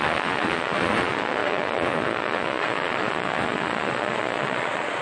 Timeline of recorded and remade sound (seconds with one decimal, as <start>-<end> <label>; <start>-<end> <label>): 0.0-5.0 remade